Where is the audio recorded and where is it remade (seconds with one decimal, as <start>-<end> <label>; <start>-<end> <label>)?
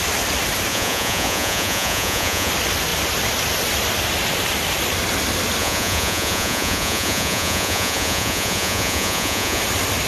0.0-0.7 recorded; 0.7-2.5 remade; 2.5-5.6 recorded; 5.6-9.6 remade; 9.6-10.1 recorded